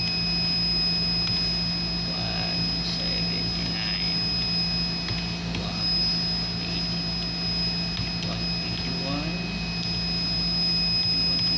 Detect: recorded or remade recorded